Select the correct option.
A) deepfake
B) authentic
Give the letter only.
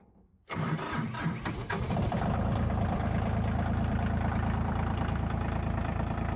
A